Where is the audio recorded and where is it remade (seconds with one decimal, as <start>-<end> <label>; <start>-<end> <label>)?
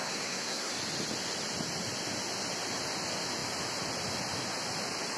0.0-0.7 remade; 0.7-5.2 recorded